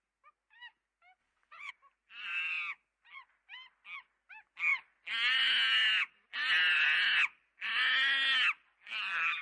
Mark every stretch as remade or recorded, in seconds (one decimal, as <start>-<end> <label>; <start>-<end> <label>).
0.0-1.2 recorded; 1.2-1.7 remade; 1.7-9.4 recorded